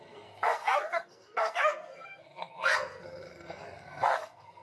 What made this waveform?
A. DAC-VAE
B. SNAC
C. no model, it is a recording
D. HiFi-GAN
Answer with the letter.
B